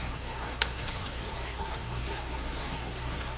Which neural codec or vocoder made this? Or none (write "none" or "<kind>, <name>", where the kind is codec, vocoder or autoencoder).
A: codec, SNAC